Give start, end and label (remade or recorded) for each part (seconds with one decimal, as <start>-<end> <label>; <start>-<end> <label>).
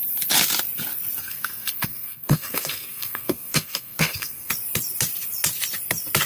0.0-1.2 recorded; 1.2-4.5 remade; 4.5-6.3 recorded